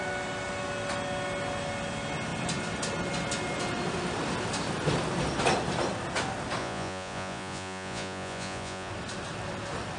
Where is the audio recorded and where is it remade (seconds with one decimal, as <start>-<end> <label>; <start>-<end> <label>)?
0.0-6.6 recorded; 6.6-8.9 remade; 8.9-10.0 recorded